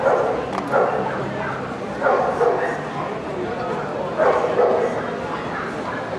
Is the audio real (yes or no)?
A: yes